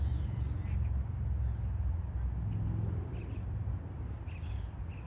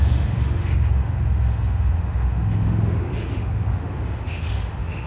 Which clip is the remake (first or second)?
second